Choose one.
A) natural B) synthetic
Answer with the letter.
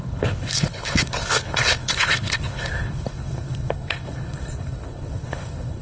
B